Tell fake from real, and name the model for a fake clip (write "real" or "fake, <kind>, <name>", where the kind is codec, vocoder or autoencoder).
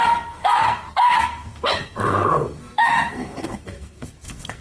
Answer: fake, codec, SNAC